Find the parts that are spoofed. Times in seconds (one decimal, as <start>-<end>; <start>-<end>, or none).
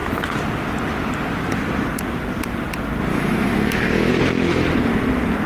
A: 3.1-4.1